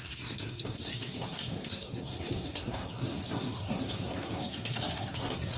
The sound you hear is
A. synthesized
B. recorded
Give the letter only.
A